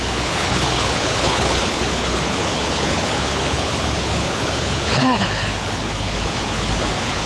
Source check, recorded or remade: remade